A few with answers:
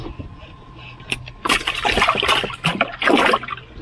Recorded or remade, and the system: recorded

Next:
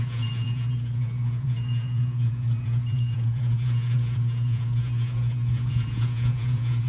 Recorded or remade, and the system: remade, vocoder, Vocos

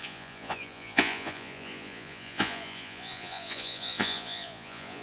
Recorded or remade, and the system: remade, vocoder, Vocos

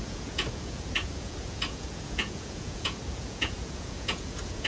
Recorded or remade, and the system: remade, vocoder, Vocos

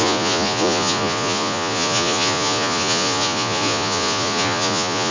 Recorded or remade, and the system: remade, vocoder, Vocos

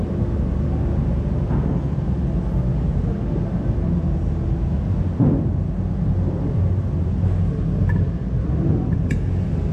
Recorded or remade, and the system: recorded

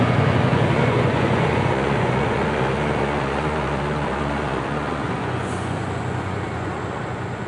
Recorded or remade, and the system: remade, vocoder, Vocos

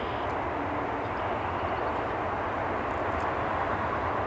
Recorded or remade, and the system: recorded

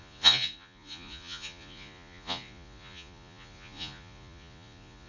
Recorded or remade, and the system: remade, vocoder, Vocos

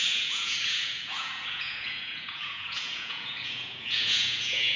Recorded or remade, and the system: remade, vocoder, Vocos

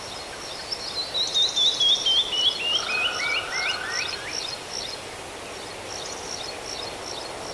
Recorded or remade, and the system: recorded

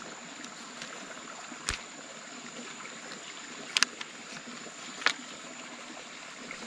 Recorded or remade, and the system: recorded